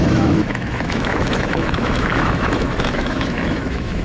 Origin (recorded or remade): remade